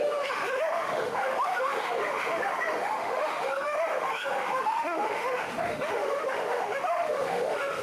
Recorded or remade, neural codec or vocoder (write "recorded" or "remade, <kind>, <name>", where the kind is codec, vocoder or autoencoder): remade, autoencoder, DAC-VAE